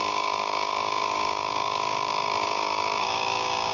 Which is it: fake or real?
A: fake